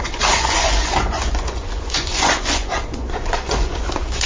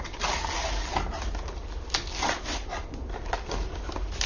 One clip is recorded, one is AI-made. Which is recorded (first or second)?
second